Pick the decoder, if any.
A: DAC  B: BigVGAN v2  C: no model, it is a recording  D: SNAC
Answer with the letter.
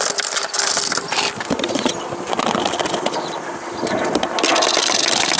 B